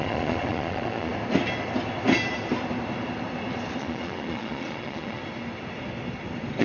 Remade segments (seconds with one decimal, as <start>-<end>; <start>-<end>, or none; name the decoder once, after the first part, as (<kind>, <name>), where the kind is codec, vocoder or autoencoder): 0.0-1.1 (vocoder, Vocos); 3.8-5.2